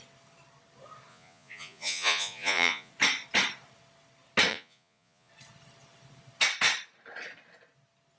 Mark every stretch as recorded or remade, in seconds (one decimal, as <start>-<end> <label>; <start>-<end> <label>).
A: 0.0-1.1 recorded; 1.1-2.9 remade; 2.9-4.5 recorded; 4.5-5.3 remade; 5.3-8.2 recorded